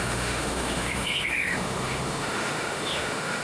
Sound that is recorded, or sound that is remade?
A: remade